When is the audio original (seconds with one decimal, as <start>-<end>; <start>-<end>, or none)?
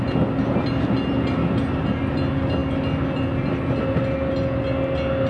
0.0-5.3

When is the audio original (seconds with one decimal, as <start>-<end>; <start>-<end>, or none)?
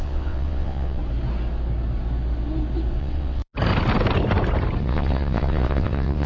1.0-3.0; 3.4-4.8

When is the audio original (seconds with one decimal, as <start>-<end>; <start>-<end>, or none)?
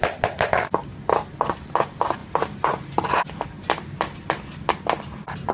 0.9-1.6; 2.2-5.5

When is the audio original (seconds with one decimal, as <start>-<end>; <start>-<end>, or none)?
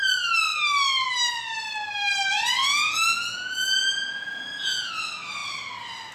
0.0-2.6; 4.9-6.1